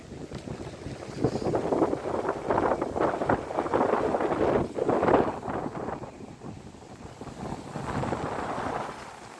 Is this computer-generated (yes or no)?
no